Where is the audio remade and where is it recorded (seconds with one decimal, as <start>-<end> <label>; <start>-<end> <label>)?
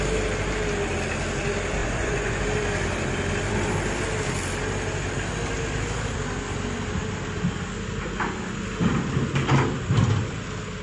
0.0-1.8 recorded; 1.8-2.4 remade; 2.4-10.8 recorded